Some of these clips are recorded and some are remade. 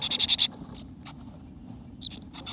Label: recorded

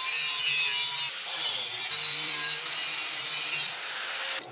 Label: remade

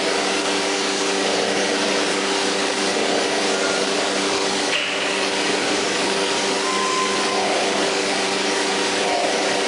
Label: remade